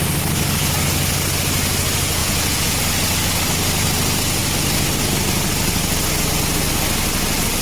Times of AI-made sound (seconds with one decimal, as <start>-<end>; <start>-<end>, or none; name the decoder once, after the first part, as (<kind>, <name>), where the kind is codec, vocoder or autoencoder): 2.2-2.8 (vocoder, Vocos)